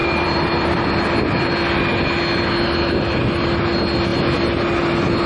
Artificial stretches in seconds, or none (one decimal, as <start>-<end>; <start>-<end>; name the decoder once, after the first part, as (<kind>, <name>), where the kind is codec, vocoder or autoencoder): 0.0-0.8 (vocoder, BigVGAN v2)